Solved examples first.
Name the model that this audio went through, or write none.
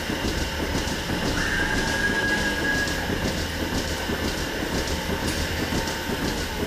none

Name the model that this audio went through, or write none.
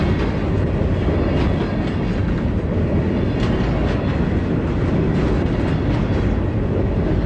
none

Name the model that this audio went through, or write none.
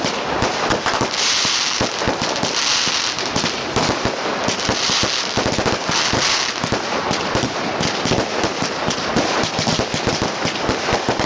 none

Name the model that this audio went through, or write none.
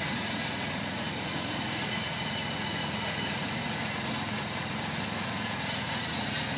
vocoder, Vocos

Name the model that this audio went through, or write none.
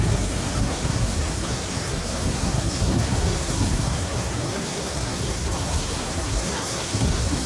codec, SNAC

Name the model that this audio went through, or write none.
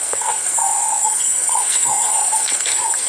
codec, SNAC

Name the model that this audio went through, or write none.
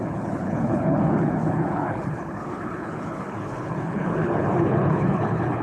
codec, HILCodec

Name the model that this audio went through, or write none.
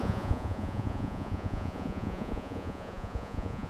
vocoder, Vocos